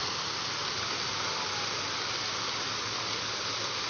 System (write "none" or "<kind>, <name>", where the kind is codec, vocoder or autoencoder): none